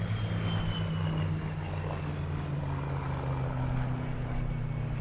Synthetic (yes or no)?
no